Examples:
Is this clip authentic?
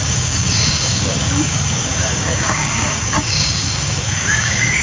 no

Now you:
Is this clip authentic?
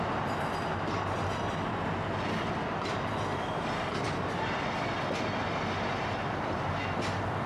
yes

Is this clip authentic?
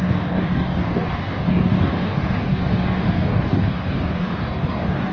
no